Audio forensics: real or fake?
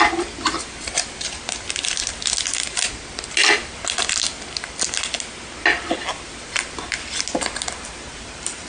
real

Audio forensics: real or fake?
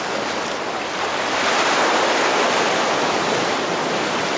fake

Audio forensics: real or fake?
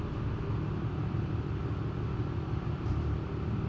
real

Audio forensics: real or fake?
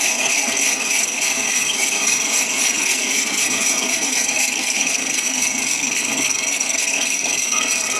fake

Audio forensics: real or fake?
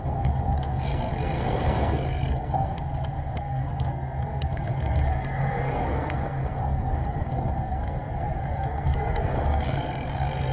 fake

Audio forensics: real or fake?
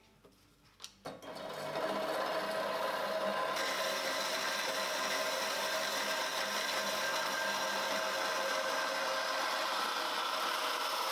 real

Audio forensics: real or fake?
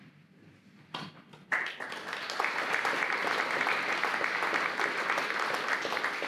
real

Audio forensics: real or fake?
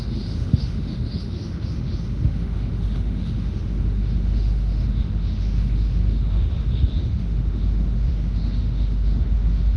fake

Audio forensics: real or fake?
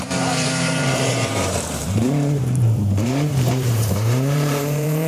fake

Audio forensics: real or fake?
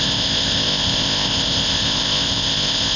fake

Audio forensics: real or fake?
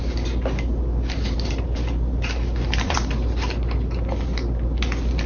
real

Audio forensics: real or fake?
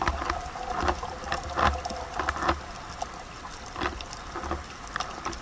real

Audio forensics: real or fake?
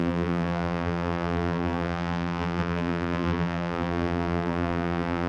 fake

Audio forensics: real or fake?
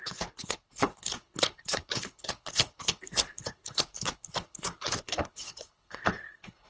fake